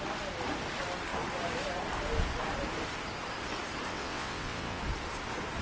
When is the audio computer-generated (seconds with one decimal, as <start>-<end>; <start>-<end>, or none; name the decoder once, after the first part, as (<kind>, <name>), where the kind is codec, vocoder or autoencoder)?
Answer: 3.9-4.8 (vocoder, WaveNeXt)